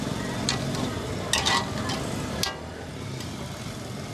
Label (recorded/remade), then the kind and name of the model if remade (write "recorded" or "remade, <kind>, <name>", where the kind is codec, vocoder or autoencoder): recorded